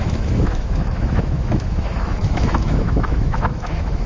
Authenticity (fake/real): fake